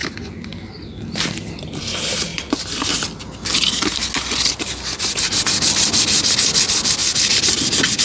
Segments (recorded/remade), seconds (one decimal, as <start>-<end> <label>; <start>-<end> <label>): 0.0-8.0 recorded